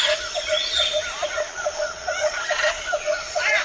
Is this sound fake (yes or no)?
yes